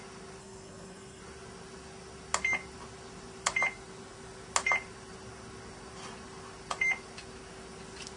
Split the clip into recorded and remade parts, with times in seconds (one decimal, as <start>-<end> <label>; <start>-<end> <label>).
0.0-0.4 recorded; 0.4-1.2 remade; 1.2-8.2 recorded